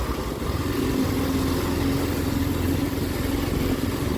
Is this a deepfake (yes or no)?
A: no